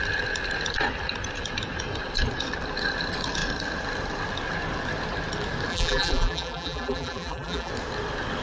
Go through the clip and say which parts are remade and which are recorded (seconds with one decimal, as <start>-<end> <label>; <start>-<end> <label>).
0.0-5.7 recorded; 5.7-7.7 remade; 7.7-8.4 recorded